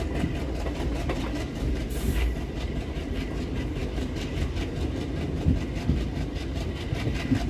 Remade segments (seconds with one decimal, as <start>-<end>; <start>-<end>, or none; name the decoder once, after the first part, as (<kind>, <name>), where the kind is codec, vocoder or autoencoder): none